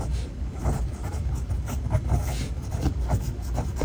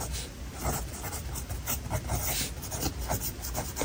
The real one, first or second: second